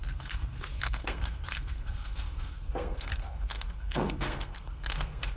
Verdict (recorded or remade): remade